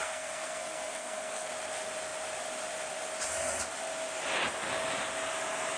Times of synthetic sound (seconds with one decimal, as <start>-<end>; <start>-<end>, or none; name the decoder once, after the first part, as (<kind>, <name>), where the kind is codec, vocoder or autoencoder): 0.0-1.5 (codec, SNAC)